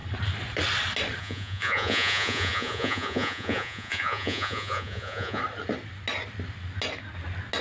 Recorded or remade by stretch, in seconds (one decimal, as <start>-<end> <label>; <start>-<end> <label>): 0.0-1.2 recorded; 1.2-5.4 remade; 5.4-7.6 recorded